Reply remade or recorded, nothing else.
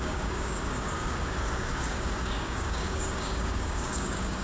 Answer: remade